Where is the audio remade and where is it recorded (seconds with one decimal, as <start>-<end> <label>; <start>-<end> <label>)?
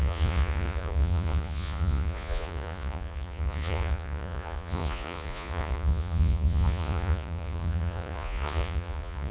0.0-9.3 remade